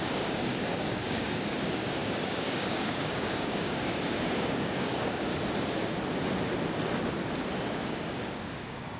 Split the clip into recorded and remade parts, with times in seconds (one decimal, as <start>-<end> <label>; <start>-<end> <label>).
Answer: 0.0-5.3 remade; 5.3-7.7 recorded; 7.7-9.0 remade